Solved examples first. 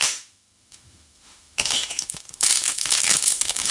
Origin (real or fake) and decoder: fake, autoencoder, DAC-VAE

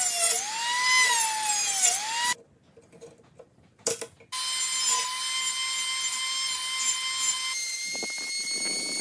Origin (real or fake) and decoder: real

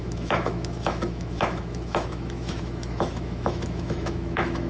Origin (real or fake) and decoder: fake, autoencoder, DAC-VAE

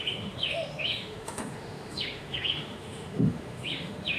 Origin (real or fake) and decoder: fake, autoencoder, DAC-VAE